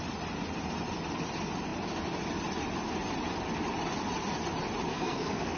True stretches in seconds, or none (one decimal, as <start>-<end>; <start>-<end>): 0.0-4.9